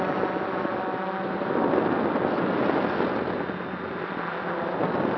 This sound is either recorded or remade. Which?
recorded